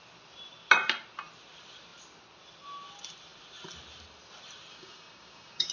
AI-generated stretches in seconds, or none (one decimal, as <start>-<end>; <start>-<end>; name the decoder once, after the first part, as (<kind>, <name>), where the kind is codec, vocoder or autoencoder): 4.7-5.7 (codec, DAC)